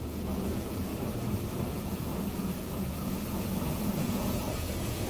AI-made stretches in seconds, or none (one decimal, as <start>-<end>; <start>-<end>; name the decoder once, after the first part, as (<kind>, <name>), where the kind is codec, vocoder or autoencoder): 0.0-0.9 (vocoder, Vocos); 1.7-5.1